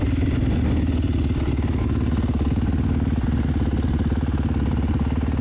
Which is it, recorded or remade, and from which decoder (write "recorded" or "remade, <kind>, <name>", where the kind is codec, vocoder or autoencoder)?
recorded